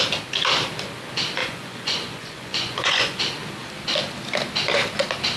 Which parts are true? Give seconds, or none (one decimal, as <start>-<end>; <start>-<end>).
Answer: 0.0-1.4; 3.2-5.4